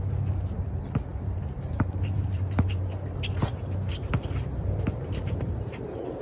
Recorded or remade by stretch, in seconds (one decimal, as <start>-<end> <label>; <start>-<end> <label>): 0.0-1.1 recorded; 1.1-2.8 remade; 2.8-3.9 recorded; 3.9-6.2 remade